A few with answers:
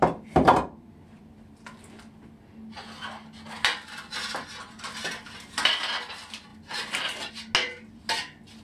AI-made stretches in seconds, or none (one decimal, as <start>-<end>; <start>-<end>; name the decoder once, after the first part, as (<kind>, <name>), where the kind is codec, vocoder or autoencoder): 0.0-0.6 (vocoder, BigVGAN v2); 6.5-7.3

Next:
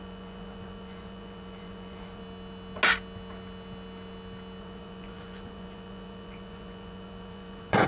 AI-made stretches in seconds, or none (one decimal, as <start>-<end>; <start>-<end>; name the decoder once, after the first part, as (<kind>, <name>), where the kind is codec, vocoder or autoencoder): 0.0-2.2 (vocoder, Vocos); 4.6-7.9

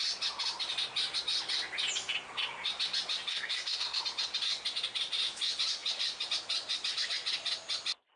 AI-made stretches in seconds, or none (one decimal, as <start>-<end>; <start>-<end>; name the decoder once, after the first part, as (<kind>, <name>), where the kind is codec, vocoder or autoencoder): 3.3-4.0 (codec, SNAC)

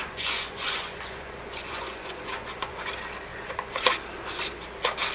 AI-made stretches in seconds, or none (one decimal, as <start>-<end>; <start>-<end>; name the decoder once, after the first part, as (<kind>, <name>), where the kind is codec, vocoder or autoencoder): 0.0-2.9 (vocoder, Vocos); 3.3-3.8

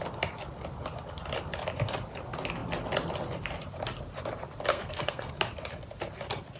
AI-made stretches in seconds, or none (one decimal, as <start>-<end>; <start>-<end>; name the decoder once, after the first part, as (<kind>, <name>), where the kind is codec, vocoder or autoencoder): 4.7-5.3 (codec, SNAC)